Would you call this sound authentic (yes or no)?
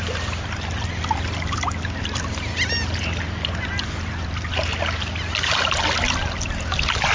yes